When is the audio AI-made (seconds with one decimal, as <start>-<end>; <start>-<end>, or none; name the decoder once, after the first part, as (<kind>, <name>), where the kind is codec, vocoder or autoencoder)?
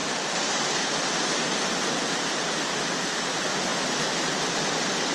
none